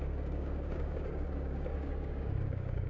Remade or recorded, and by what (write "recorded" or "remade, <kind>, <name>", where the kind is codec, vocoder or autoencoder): remade, codec, DAC